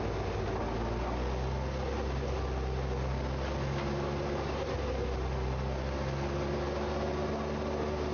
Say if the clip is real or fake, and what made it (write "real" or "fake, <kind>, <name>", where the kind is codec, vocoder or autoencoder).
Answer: real